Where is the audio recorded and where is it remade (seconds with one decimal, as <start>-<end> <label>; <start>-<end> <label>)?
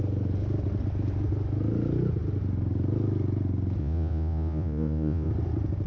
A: 0.0-3.8 recorded; 3.8-5.3 remade; 5.3-5.9 recorded